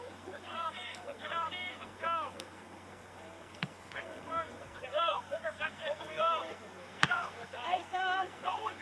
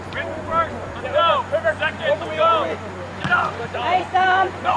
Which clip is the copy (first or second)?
first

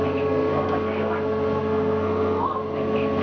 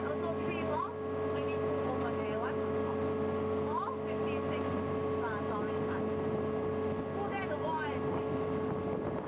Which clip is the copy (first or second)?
first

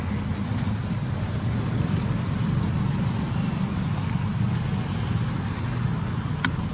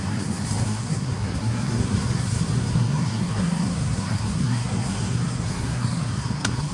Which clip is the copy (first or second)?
second